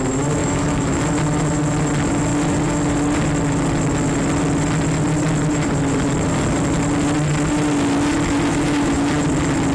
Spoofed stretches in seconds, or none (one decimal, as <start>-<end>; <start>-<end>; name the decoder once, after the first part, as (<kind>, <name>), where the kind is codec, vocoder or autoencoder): 0.4-1.0 (autoencoder, DAC-VAE); 8.5-9.1